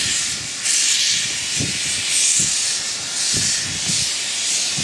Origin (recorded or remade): recorded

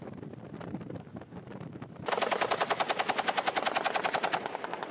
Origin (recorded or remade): recorded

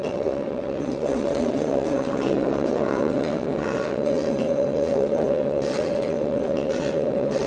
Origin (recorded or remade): remade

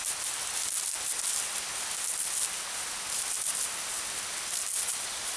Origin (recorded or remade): recorded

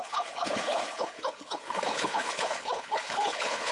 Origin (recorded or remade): remade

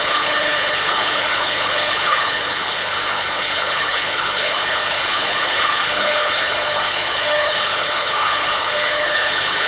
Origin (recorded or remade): remade